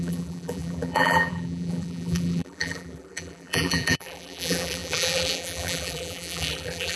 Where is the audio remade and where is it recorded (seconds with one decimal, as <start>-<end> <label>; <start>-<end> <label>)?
0.0-7.0 remade